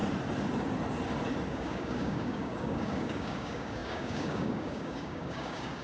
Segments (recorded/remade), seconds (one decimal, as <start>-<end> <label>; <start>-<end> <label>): 0.0-1.5 recorded; 1.5-5.8 remade